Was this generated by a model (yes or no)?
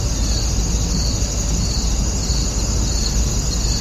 no